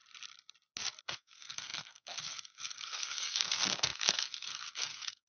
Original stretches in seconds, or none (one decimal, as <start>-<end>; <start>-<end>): 0.0-1.0